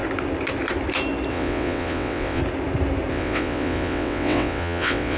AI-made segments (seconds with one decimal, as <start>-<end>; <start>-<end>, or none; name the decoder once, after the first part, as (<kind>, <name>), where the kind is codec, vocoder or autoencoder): 1.3-2.4 (vocoder, WaveNeXt); 3.1-5.2